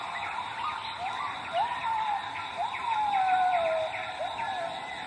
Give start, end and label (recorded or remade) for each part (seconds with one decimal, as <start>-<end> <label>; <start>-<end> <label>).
0.0-5.1 recorded